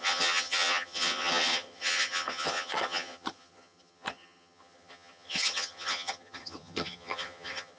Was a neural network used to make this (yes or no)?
yes